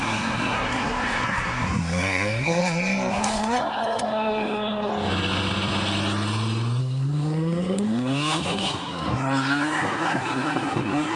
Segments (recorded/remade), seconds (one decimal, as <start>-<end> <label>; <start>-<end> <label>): 0.0-2.6 remade; 2.6-3.1 recorded; 3.1-4.9 remade; 4.9-6.8 recorded; 6.8-11.2 remade